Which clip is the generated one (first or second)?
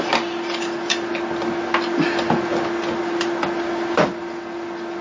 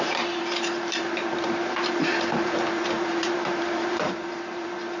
second